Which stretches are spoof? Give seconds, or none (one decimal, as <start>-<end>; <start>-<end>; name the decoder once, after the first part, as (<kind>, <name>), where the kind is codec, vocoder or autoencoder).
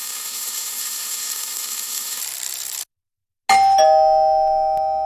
0.0-2.2 (autoencoder, DAC-VAE)